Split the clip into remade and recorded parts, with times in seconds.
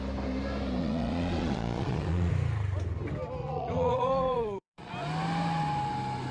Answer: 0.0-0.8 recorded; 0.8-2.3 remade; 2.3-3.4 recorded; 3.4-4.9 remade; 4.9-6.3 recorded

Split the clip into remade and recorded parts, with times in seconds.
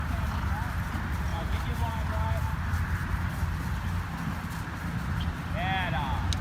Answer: 0.0-1.3 recorded; 1.3-1.9 remade; 1.9-6.4 recorded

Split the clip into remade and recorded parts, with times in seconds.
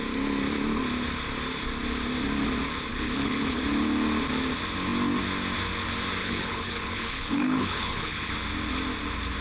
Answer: 0.0-2.9 recorded; 2.9-3.6 remade; 3.6-6.2 recorded; 6.2-8.3 remade; 8.3-9.4 recorded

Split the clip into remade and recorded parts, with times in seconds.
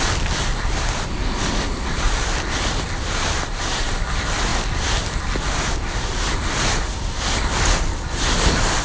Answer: 0.0-8.8 recorded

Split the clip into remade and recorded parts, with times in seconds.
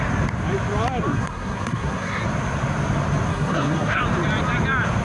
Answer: 0.0-1.1 recorded; 1.1-2.2 remade; 2.2-3.3 recorded; 3.3-4.0 remade; 4.0-5.0 recorded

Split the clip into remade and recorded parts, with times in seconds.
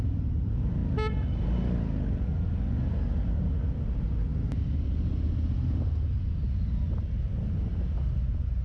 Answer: 0.0-8.6 recorded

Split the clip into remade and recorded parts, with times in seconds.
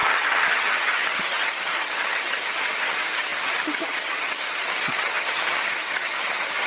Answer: 0.0-6.7 remade